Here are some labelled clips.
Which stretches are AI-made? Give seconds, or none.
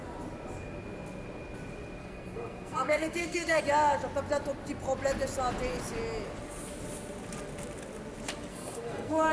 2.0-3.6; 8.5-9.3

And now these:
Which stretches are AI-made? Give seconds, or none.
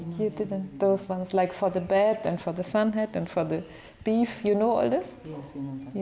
none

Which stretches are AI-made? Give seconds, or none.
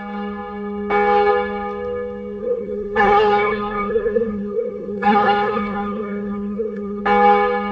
2.4-7.0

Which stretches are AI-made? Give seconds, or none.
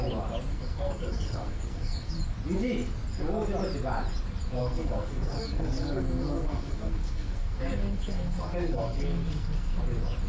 0.5-2.1; 4.6-9.8